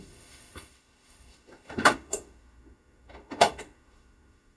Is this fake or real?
fake